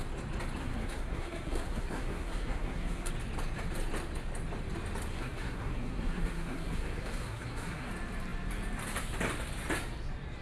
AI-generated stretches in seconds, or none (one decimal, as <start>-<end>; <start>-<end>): 0.6-3.1; 5.1-7.9